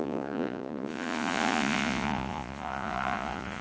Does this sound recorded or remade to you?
remade